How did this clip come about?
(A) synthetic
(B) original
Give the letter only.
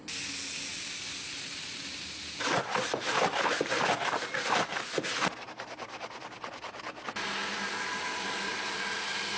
B